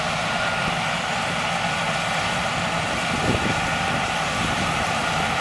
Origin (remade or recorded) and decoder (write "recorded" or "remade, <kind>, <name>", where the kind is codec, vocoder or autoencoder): recorded